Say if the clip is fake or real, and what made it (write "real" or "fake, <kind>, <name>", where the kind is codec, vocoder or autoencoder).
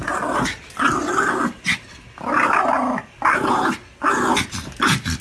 real